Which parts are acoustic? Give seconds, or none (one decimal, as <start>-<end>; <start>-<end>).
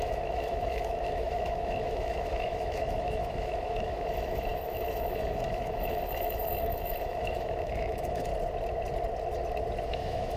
8.3-9.9